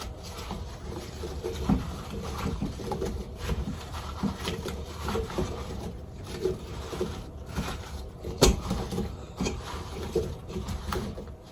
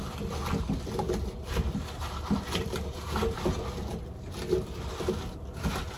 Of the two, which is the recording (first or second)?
second